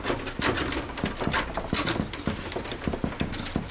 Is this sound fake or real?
real